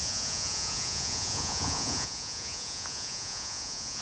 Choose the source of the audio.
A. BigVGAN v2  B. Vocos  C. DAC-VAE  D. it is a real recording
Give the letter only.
B